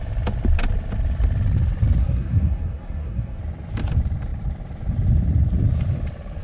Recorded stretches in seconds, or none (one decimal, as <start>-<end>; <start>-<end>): 0.0-2.0; 3.4-6.4